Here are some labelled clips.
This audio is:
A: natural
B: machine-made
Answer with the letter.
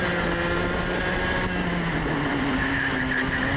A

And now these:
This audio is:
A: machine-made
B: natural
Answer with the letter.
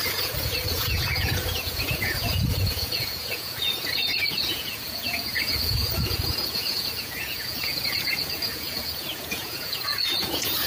A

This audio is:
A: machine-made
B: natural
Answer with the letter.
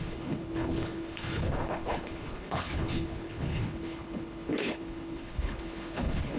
A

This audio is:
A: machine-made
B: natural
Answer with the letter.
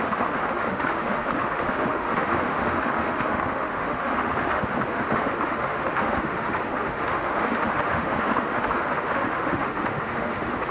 A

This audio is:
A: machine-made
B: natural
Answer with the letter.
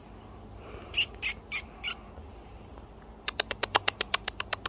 B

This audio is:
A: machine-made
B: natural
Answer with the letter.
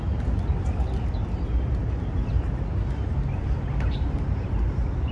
B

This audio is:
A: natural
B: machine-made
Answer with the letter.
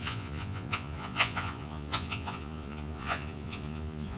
B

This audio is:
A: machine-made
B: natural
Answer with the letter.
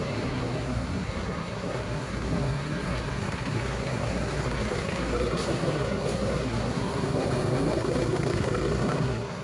A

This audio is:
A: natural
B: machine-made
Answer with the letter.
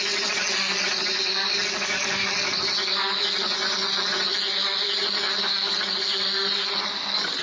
A